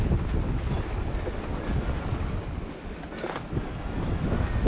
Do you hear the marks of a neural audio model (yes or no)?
no